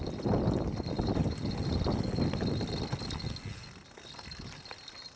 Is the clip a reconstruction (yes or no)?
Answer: no